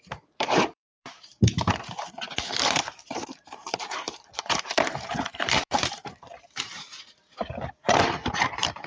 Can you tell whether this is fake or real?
fake